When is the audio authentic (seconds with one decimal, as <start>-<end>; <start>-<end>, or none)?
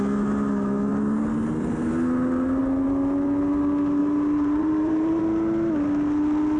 0.0-4.0; 5.2-6.6